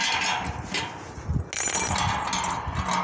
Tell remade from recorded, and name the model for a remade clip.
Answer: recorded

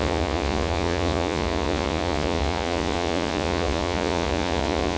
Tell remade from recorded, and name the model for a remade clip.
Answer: remade, vocoder, Vocos